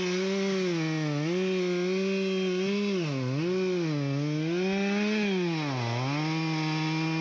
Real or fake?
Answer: real